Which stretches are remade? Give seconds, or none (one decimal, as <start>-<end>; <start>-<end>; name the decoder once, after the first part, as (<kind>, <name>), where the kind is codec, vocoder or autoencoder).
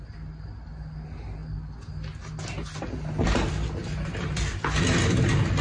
none